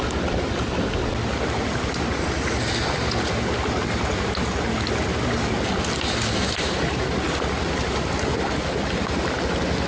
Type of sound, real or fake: real